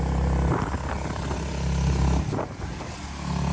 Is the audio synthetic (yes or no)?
no